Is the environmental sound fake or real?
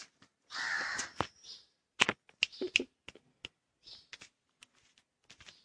real